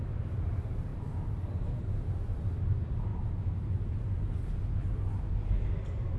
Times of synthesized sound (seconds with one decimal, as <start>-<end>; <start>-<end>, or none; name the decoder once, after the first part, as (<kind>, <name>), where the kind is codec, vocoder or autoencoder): none